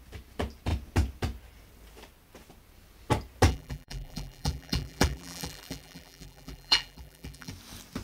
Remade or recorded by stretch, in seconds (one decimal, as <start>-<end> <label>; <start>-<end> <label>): 0.0-3.5 recorded; 3.5-7.5 remade; 7.5-8.0 recorded